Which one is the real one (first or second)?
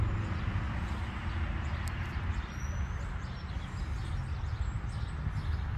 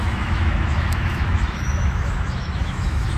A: first